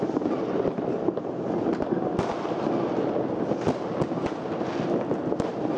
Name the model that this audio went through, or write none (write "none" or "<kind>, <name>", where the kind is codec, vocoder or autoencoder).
none